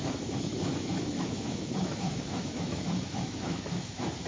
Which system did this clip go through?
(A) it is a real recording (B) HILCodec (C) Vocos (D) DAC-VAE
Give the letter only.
D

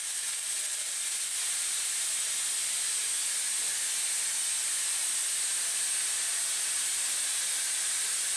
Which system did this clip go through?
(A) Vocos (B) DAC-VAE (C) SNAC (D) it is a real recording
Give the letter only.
D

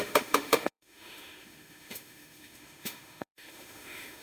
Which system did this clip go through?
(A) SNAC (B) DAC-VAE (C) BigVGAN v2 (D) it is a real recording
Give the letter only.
B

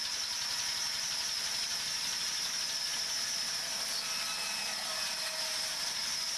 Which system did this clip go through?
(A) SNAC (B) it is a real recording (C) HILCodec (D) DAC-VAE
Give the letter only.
B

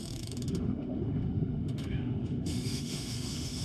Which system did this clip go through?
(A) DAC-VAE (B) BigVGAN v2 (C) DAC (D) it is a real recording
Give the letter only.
A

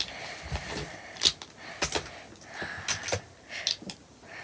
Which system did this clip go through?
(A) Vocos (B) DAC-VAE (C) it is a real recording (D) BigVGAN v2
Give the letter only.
C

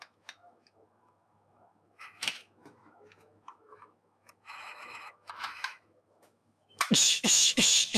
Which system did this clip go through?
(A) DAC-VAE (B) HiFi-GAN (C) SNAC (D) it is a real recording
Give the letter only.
A